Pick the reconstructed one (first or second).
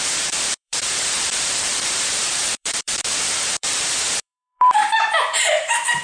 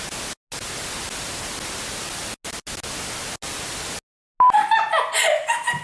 first